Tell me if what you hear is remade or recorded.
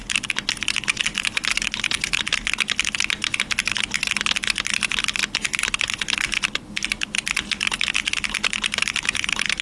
recorded